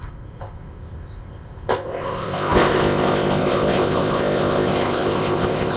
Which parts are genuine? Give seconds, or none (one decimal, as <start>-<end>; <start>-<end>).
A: none